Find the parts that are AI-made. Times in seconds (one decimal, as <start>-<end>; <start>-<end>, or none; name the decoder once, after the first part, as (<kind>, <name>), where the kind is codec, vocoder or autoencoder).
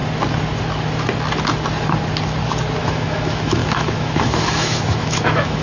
2.8-5.6 (autoencoder, DAC-VAE)